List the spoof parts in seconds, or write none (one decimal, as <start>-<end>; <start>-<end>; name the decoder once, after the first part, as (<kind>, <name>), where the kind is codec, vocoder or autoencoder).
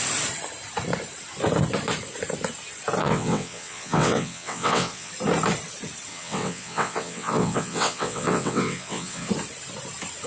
3.0-5.1 (vocoder, WaveNeXt); 6.1-9.3